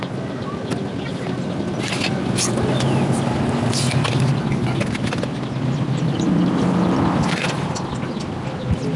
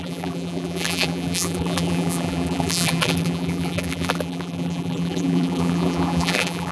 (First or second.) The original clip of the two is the first